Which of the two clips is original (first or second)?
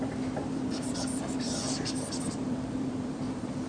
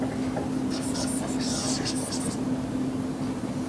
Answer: second